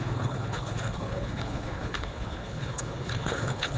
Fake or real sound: fake